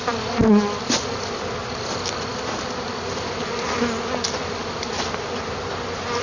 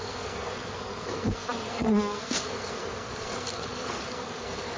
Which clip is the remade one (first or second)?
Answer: second